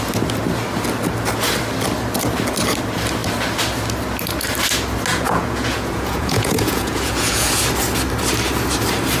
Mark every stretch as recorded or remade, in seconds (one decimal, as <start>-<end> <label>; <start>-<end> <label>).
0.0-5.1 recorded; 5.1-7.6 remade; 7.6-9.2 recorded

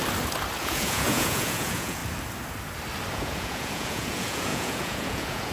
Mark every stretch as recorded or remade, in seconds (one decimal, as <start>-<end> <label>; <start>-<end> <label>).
0.0-0.6 recorded; 0.6-2.0 remade; 2.0-3.1 recorded; 3.1-5.5 remade

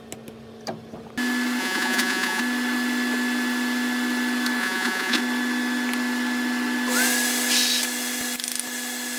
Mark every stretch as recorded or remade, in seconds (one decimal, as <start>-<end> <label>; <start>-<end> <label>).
0.0-1.6 recorded; 1.6-2.4 remade; 2.4-4.6 recorded; 4.6-5.2 remade; 5.2-9.2 recorded

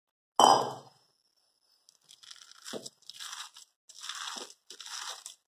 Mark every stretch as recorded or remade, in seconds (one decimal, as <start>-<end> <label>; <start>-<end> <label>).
0.0-5.5 recorded

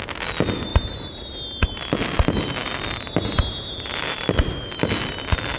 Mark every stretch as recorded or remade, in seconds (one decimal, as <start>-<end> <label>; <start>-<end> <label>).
0.0-5.6 recorded

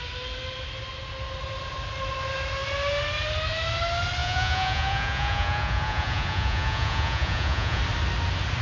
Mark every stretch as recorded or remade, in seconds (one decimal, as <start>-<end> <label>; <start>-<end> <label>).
0.0-4.2 recorded; 4.2-7.8 remade; 7.8-8.6 recorded

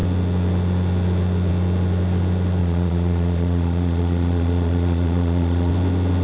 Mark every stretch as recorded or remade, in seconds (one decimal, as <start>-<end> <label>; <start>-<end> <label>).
0.0-2.6 recorded; 2.6-5.7 remade; 5.7-6.2 recorded